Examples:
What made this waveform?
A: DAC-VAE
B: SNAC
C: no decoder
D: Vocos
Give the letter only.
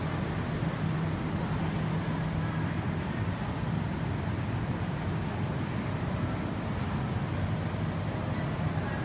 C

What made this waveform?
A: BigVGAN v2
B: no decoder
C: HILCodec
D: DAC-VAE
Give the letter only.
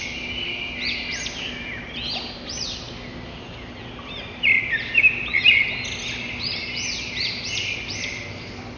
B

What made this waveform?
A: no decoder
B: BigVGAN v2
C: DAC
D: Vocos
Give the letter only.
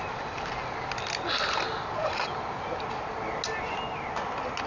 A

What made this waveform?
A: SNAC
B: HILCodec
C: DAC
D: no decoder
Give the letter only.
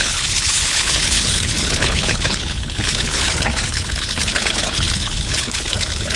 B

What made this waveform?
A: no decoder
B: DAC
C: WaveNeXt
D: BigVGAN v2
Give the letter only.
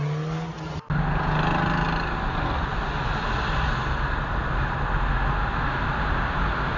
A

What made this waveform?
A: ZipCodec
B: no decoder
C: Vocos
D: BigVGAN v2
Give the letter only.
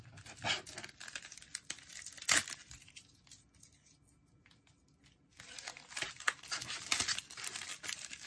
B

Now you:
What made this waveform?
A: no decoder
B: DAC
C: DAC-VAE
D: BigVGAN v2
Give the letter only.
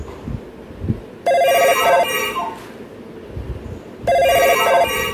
A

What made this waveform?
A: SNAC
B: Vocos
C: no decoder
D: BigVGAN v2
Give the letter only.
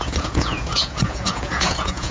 B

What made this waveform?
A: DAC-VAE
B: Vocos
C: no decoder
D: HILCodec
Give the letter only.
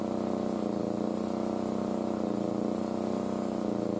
C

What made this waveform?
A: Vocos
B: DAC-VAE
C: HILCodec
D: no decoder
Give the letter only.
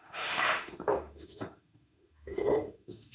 B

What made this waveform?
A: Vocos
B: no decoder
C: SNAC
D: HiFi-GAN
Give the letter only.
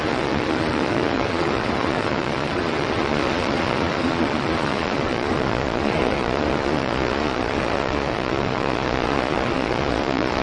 A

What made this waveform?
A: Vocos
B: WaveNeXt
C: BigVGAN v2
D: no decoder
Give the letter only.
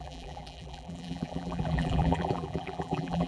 C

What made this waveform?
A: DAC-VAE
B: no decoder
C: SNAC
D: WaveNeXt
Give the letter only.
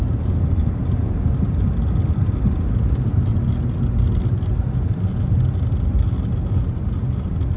B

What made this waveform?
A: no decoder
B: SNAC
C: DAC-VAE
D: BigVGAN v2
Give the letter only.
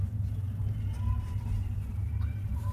D